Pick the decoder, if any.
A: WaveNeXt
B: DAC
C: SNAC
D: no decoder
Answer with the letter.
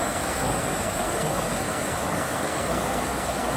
C